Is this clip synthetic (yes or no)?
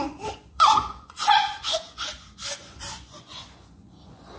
yes